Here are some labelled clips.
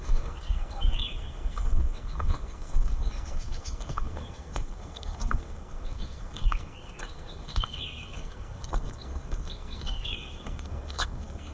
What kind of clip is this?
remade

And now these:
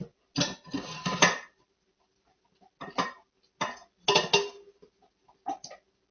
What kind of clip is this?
recorded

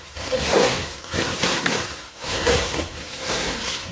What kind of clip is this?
remade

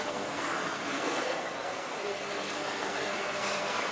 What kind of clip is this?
remade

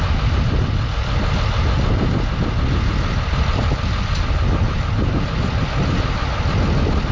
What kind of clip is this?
recorded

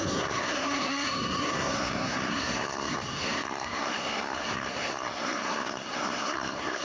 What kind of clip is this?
remade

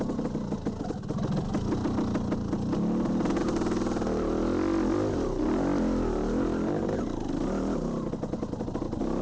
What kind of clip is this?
recorded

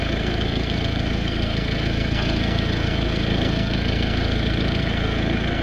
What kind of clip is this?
remade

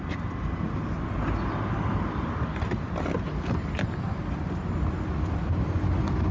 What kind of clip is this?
recorded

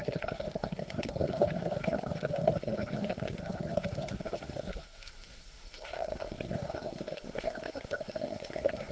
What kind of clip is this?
remade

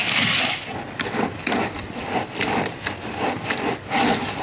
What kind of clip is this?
recorded